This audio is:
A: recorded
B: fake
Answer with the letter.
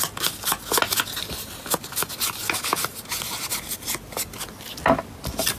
A